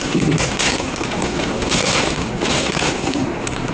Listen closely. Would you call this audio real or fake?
fake